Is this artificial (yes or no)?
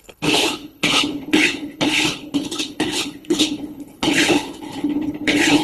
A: yes